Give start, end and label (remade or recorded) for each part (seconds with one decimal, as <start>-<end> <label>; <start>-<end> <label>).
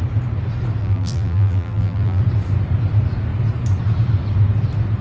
0.0-0.8 recorded; 0.8-2.2 remade; 2.2-5.0 recorded